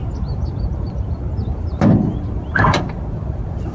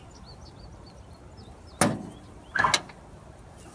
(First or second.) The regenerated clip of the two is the first